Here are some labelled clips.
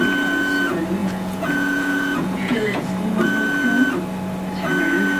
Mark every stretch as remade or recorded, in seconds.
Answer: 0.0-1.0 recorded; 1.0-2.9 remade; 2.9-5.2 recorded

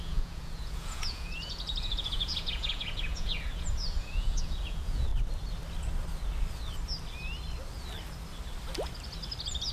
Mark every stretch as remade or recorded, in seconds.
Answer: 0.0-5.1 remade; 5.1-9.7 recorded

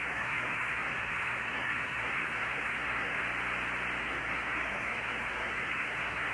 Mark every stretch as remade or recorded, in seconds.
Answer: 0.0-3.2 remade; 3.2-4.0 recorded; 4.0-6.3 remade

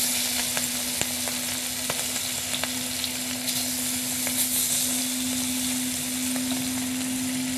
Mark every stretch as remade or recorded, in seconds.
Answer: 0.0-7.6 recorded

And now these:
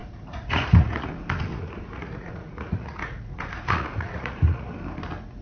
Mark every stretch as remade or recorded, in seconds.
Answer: 0.0-1.1 remade; 1.1-1.5 recorded; 1.5-4.7 remade; 4.7-5.4 recorded

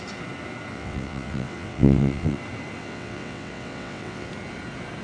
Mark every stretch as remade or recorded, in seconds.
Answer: 0.0-0.7 recorded; 0.7-2.4 remade; 2.4-2.8 recorded; 2.8-4.3 remade; 4.3-5.0 recorded

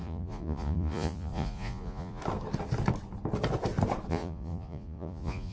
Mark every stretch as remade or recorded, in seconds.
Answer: 0.0-2.2 remade; 2.2-4.1 recorded; 4.1-5.5 remade

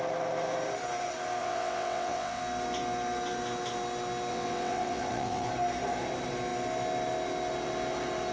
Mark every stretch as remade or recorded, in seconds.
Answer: 0.0-1.4 recorded; 1.4-2.4 remade; 2.4-4.3 recorded; 4.3-5.5 remade; 5.5-8.3 recorded